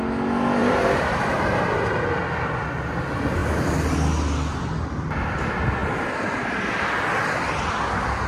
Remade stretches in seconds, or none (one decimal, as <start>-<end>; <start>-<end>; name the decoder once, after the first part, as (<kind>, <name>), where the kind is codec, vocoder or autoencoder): 0.6-2.0 (vocoder, BigVGAN v2)